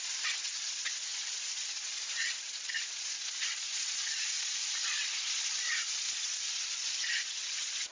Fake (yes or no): yes